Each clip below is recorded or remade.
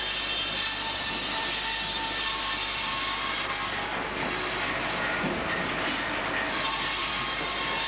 remade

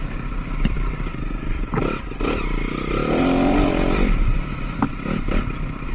remade